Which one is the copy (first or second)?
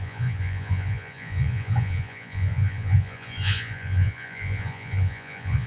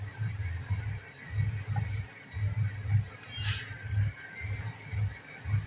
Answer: first